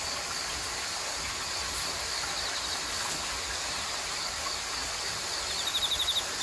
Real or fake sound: real